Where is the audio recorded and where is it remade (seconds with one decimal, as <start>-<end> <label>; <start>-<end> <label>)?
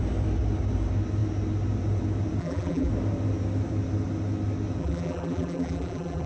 0.0-2.4 recorded; 2.4-2.9 remade; 2.9-4.8 recorded; 4.8-6.3 remade